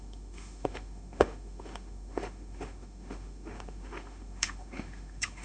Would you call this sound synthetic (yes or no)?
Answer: yes